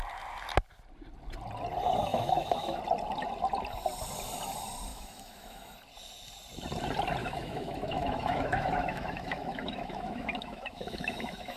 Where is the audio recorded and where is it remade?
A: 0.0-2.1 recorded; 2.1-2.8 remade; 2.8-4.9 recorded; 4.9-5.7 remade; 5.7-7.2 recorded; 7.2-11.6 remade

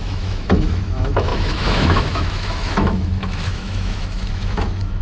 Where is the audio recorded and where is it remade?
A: 0.0-5.0 remade

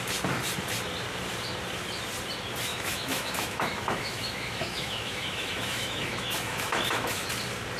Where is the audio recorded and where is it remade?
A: 0.0-2.7 recorded; 2.7-7.3 remade; 7.3-7.8 recorded

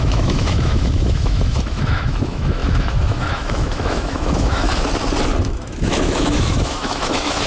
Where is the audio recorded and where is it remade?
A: 0.0-4.7 remade; 4.7-5.4 recorded; 5.4-7.5 remade

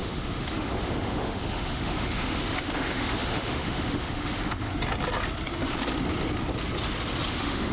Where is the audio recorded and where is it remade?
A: 0.0-4.7 remade; 4.7-7.3 recorded; 7.3-7.7 remade

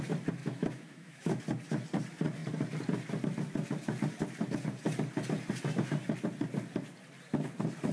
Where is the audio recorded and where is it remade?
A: 0.0-0.4 recorded; 0.4-1.4 remade; 1.4-7.9 recorded